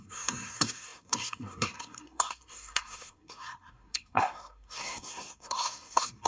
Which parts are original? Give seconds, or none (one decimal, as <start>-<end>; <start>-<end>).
none